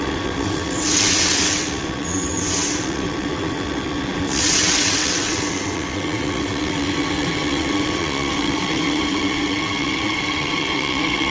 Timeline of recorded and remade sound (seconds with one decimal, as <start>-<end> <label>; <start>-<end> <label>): 0.0-11.3 remade